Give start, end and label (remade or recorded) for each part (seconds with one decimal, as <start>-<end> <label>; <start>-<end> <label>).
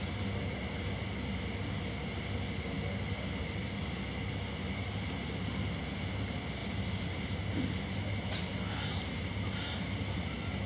0.0-10.7 recorded